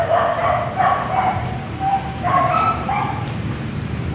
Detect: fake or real fake